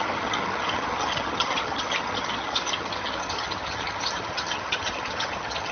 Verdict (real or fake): fake